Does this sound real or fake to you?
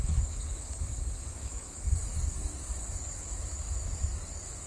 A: fake